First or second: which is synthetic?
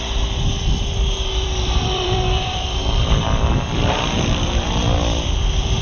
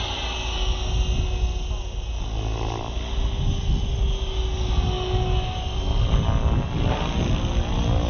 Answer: first